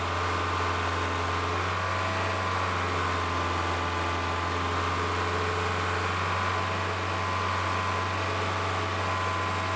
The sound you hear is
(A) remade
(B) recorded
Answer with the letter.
B